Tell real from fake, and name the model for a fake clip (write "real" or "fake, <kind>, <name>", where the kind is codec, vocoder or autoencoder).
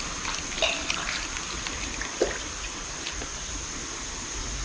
real